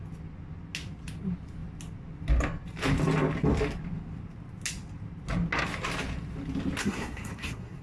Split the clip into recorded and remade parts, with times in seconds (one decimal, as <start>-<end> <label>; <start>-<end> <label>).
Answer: 0.0-6.8 recorded; 6.8-7.8 remade